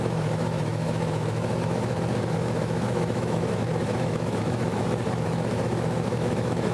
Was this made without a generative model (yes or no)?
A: no